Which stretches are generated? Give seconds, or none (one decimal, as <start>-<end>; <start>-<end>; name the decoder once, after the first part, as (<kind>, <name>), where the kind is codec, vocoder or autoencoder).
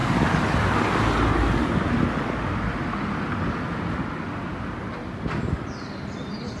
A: 3.9-6.6 (vocoder, BigVGAN v2)